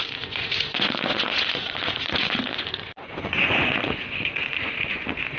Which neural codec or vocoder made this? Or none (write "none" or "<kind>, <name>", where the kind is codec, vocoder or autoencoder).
vocoder, Vocos